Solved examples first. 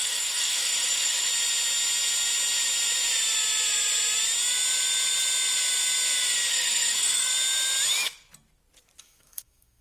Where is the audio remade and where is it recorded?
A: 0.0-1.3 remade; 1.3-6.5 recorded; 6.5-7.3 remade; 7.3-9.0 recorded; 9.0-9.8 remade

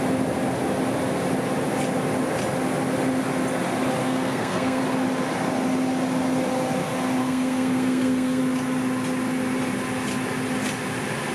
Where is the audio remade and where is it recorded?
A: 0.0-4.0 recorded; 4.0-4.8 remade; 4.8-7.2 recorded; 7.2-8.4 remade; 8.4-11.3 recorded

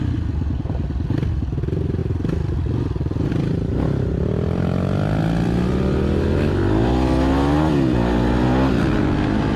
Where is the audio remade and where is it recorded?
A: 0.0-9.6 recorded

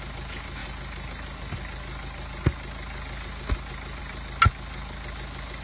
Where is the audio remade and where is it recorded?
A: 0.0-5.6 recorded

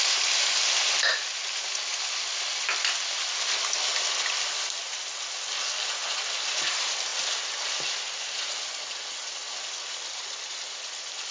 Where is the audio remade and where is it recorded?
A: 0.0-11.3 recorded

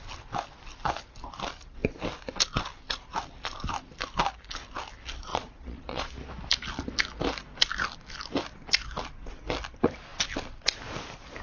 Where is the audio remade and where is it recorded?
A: 0.0-5.3 recorded; 5.3-6.1 remade; 6.1-11.4 recorded

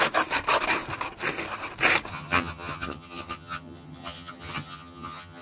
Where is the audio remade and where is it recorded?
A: 0.0-2.1 recorded; 2.1-5.4 remade

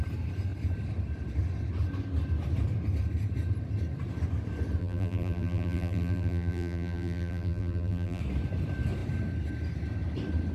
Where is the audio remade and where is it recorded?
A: 0.0-4.8 recorded; 4.8-8.2 remade; 8.2-10.5 recorded